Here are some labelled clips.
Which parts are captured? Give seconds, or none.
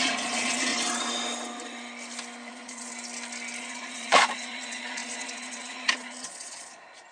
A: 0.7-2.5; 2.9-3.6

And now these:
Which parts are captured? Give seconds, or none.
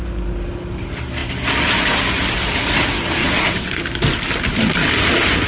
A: 0.0-3.2; 3.8-5.5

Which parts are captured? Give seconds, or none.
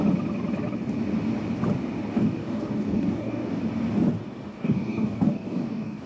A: 0.0-2.1; 3.6-4.5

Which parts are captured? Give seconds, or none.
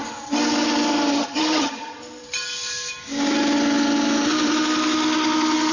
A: 0.0-1.1; 2.0-5.7